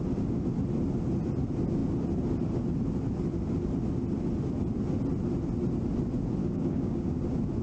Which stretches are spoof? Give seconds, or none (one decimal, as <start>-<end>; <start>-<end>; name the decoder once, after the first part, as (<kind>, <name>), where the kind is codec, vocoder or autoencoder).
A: 6.4-7.1 (codec, DAC)